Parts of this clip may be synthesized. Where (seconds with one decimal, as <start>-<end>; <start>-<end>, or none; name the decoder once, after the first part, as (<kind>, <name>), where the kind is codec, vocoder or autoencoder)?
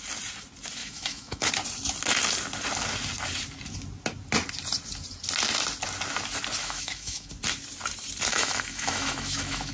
0.8-1.5 (autoencoder, DAC-VAE); 6.6-7.3; 8.3-9.7